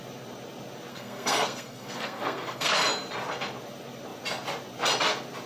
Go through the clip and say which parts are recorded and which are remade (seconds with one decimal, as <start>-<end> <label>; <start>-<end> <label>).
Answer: 0.0-0.9 recorded; 0.9-2.7 remade; 2.7-5.5 recorded